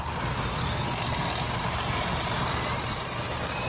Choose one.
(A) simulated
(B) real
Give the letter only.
B